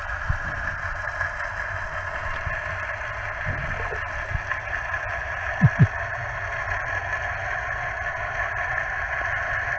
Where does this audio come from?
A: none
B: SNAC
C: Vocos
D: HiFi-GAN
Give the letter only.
A